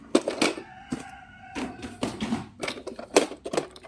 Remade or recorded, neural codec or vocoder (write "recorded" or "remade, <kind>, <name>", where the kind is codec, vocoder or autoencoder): recorded